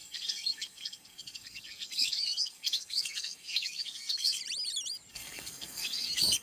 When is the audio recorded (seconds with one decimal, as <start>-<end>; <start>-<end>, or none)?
4.4-5.1